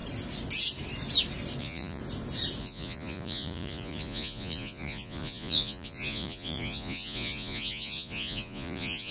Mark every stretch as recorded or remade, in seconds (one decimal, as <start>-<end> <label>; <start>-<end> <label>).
0.0-1.6 recorded; 1.6-2.0 remade; 2.0-2.6 recorded; 2.6-9.1 remade